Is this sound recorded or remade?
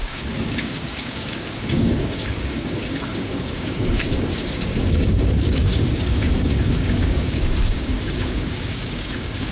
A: remade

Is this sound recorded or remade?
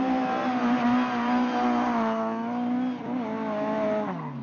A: recorded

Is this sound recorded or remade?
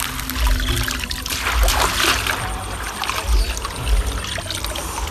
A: recorded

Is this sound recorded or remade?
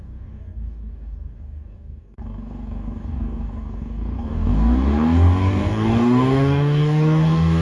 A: remade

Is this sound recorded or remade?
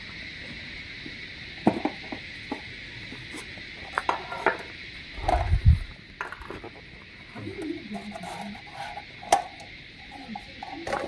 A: recorded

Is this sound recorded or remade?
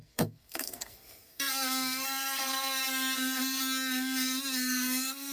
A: remade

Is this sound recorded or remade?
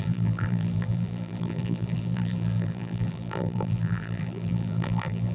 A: remade